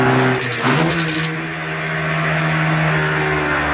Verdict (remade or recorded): recorded